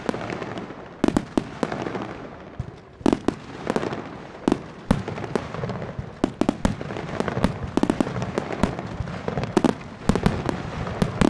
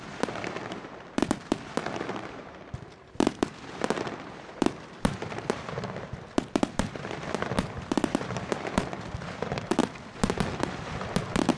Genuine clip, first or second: first